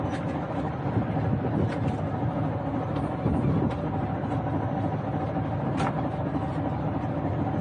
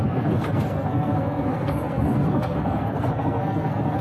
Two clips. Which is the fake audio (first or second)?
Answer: second